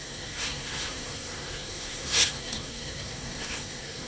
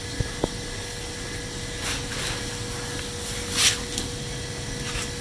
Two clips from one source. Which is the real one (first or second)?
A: second